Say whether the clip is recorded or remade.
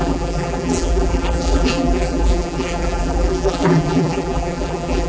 remade